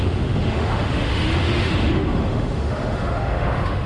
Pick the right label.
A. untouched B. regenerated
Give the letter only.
B